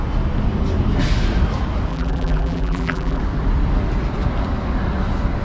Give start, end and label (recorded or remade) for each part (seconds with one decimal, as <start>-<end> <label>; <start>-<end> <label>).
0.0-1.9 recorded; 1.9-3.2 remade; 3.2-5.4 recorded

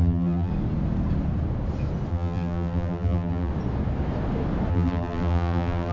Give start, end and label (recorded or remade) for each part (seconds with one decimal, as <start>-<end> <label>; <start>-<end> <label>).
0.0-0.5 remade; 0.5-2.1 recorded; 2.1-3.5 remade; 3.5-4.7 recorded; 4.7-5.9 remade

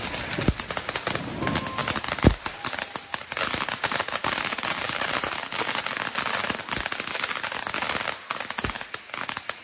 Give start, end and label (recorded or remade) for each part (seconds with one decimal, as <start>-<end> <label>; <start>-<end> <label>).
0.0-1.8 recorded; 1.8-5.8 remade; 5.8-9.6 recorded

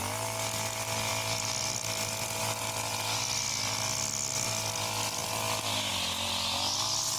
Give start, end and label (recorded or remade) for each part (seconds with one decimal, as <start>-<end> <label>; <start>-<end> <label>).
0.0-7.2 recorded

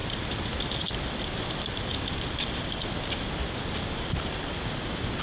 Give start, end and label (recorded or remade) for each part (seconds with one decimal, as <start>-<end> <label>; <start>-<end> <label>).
0.0-1.5 remade; 1.5-1.9 recorded; 1.9-2.6 remade; 2.6-5.2 recorded

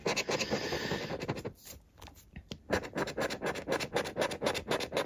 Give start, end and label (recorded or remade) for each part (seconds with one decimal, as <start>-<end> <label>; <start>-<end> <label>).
0.0-5.1 recorded